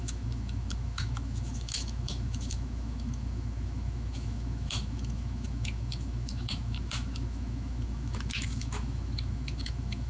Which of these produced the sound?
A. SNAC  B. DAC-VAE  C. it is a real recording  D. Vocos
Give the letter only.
B